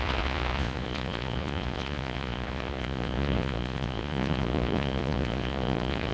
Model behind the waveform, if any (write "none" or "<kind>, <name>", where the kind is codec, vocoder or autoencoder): vocoder, Vocos